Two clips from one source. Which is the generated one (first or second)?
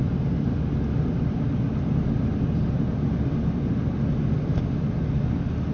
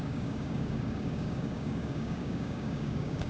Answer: second